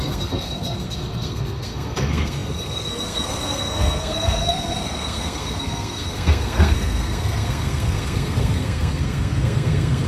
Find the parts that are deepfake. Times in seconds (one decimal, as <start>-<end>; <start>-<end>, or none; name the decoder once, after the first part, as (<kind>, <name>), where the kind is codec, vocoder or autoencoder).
0.0-10.1 (codec, SNAC)